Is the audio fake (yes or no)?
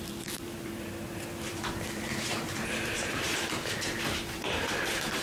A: yes